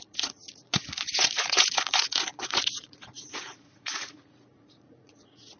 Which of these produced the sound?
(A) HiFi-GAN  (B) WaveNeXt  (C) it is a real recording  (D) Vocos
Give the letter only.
D